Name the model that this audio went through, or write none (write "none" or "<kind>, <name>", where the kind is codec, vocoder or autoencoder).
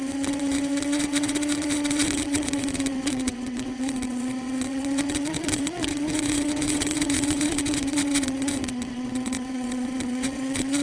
vocoder, WaveNeXt